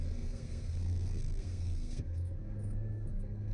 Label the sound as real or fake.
fake